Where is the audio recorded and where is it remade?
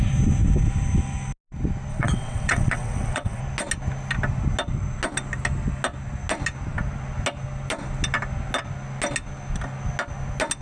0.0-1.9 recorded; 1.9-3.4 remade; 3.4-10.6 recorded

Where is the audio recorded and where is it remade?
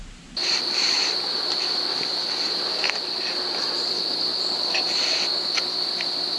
0.0-1.0 remade; 1.0-4.8 recorded; 4.8-5.3 remade; 5.3-6.4 recorded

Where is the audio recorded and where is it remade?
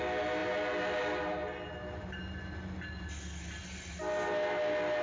0.0-5.0 recorded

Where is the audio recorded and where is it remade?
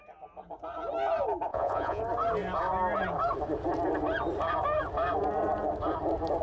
0.0-1.5 recorded; 1.5-2.0 remade; 2.0-6.4 recorded